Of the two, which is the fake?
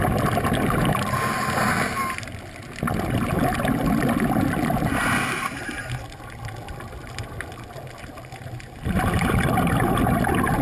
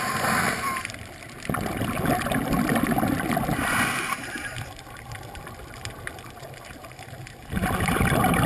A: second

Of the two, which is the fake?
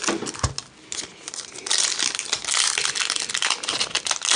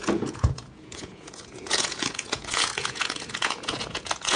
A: second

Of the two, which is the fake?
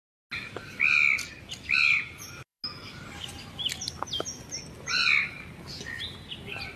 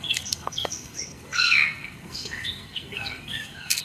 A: second